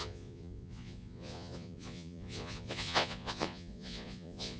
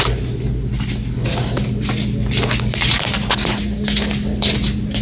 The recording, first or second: second